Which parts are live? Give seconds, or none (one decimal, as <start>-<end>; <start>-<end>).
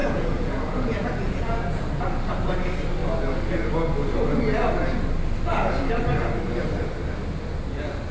2.0-8.1